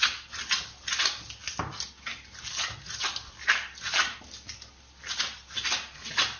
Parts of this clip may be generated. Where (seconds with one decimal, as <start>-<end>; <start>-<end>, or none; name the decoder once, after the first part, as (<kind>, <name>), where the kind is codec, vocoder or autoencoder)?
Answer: none